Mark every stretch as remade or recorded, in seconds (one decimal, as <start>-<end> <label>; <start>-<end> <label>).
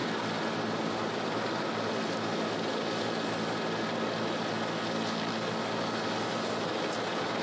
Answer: 0.0-7.4 recorded